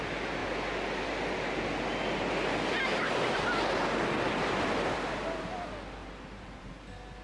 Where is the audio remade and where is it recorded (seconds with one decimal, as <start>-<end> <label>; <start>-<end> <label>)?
0.0-6.0 recorded; 6.0-6.7 remade; 6.7-7.2 recorded